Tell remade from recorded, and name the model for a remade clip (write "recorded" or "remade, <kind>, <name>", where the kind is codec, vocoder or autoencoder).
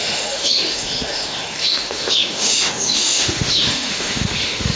remade, autoencoder, DAC-VAE